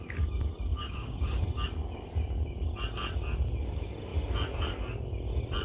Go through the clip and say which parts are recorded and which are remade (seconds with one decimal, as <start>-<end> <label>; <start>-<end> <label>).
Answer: 0.0-0.7 recorded; 0.7-1.4 remade; 1.4-5.6 recorded